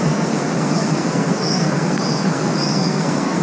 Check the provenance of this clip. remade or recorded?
remade